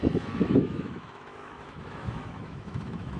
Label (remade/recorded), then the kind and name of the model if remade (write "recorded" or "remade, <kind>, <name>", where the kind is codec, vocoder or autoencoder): remade, autoencoder, DAC-VAE